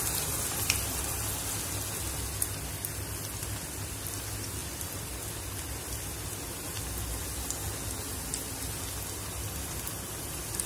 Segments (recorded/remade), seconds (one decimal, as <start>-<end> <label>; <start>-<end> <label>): 0.0-10.7 recorded